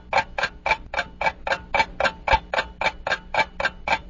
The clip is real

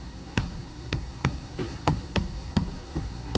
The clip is fake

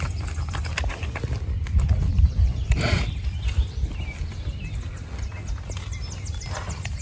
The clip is real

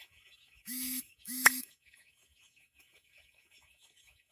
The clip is fake